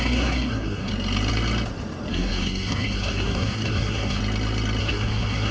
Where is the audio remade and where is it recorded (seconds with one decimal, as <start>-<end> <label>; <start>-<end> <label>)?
0.0-0.9 remade; 0.9-2.1 recorded; 2.1-4.2 remade; 4.2-4.8 recorded; 4.8-5.5 remade